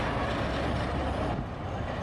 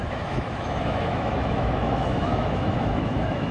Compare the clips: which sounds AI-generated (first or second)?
second